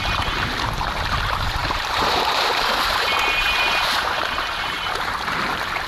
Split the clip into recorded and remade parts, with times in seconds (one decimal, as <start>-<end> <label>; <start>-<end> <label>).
0.0-0.5 remade; 0.5-1.1 recorded; 1.1-5.9 remade